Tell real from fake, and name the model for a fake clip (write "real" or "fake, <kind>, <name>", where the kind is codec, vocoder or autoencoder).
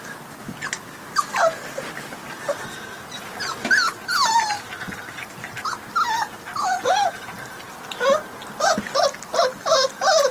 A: real